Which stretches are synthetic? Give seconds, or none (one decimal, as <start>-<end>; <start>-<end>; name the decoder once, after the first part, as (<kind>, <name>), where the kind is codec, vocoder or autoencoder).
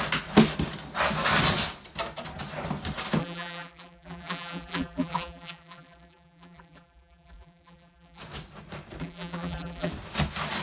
3.2-8.2 (vocoder, BigVGAN v2); 9.0-9.9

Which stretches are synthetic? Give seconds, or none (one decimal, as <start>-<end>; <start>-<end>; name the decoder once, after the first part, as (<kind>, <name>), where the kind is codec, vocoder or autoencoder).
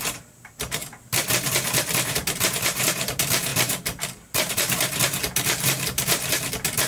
0.0-0.8 (vocoder, BigVGAN v2); 1.3-6.9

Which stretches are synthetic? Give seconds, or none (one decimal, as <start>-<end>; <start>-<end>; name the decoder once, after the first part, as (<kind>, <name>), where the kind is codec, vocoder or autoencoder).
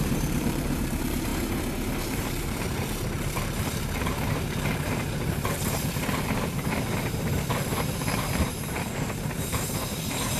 0.0-1.3 (vocoder, BigVGAN v2); 2.0-10.4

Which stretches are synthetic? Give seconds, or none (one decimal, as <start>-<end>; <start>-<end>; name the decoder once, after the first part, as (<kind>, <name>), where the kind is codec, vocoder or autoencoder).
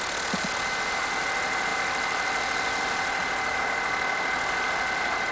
none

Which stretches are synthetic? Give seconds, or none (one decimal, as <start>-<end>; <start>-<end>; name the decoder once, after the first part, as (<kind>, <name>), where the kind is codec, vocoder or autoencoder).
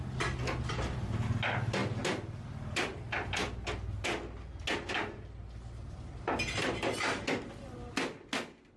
none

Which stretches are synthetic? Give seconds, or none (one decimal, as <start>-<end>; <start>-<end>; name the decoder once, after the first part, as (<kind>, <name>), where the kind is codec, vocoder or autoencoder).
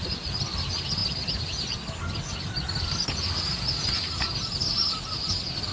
none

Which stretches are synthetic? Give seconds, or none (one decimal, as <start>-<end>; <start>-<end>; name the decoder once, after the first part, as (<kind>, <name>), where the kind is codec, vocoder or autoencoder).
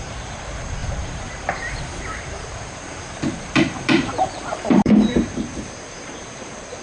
0.0-6.8 (vocoder, BigVGAN v2)